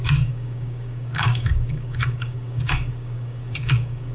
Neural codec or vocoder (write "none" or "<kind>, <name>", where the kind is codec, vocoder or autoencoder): codec, DAC